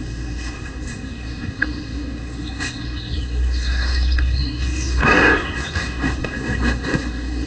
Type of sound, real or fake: fake